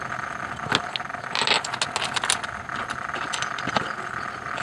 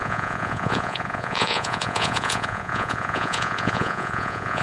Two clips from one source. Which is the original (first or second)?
first